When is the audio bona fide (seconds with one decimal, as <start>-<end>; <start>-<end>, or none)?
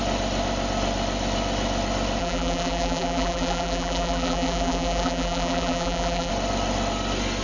0.0-2.2; 6.3-7.4